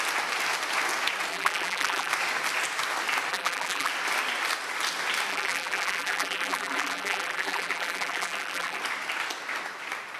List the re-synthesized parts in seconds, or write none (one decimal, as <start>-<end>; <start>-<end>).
1.3-2.1; 3.3-3.9; 5.3-8.8